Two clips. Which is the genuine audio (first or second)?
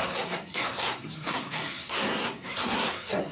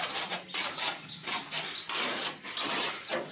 second